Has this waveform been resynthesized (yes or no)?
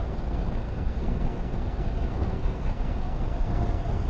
yes